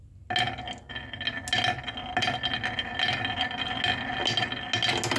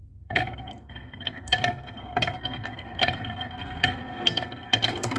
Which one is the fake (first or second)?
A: second